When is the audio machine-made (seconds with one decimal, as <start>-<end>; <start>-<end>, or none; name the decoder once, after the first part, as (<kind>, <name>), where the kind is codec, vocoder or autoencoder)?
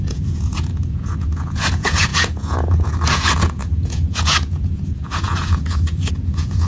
0.0-6.7 (vocoder, Vocos)